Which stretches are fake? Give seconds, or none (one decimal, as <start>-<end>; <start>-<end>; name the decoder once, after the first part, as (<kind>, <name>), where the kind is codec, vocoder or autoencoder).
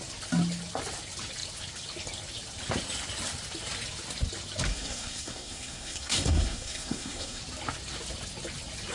4.7-7.4 (codec, SNAC)